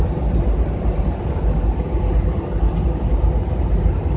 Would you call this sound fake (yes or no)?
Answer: no